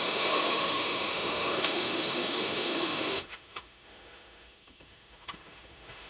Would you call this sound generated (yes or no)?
yes